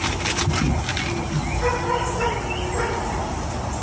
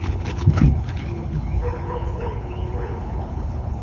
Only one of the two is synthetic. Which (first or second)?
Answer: second